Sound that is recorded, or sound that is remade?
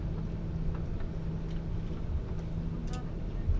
recorded